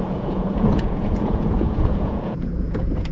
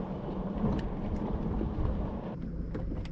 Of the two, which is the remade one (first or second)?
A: first